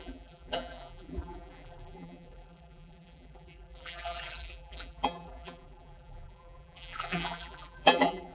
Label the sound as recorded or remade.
remade